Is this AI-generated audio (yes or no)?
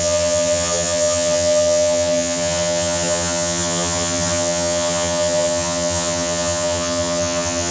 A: yes